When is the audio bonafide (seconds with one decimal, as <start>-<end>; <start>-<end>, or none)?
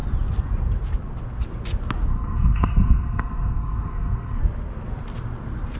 0.0-2.1; 4.4-5.8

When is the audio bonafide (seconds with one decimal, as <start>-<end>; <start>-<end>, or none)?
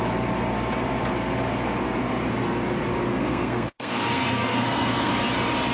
0.0-3.2; 5.1-5.7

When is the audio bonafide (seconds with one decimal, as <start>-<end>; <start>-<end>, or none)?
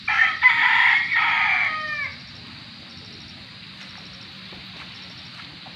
0.0-5.8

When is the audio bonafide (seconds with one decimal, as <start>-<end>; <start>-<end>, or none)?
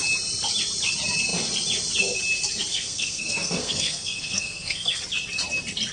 0.0-2.7; 5.0-5.9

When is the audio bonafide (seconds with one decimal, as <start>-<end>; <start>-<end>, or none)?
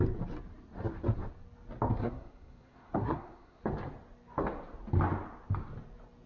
0.0-2.0; 3.6-6.3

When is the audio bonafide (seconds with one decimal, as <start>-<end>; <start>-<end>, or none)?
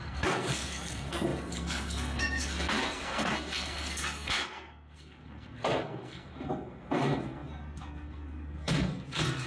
none